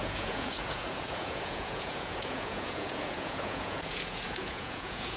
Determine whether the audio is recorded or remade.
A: remade